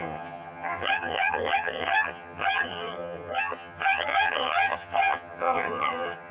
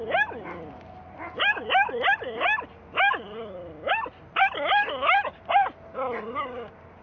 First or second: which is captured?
second